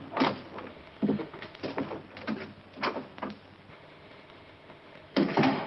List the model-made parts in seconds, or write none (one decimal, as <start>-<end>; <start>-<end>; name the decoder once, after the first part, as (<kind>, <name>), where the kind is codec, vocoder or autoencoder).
0.7-1.6 (autoencoder, DAC-VAE); 3.7-5.7